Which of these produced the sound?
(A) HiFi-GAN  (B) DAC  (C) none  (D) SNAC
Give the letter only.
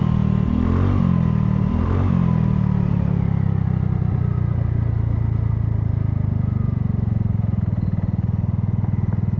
C